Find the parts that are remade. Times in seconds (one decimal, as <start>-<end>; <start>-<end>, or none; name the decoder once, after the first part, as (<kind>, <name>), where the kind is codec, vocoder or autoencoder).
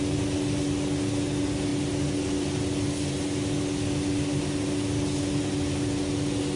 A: none